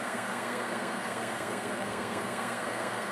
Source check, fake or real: fake